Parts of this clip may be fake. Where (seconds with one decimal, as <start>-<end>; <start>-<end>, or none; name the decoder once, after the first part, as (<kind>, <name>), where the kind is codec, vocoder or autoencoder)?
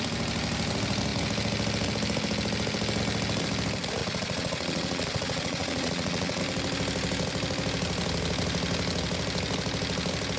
4.0-6.4 (vocoder, Vocos)